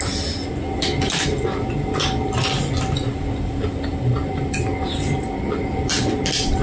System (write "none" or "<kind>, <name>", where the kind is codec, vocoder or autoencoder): none